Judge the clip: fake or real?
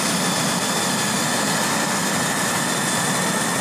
real